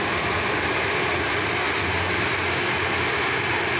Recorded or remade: recorded